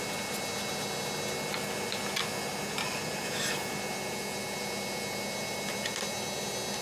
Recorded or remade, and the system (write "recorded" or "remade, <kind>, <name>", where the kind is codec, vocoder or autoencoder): recorded